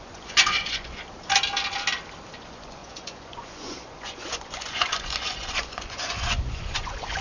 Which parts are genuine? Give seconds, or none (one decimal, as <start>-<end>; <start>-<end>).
1.0-2.4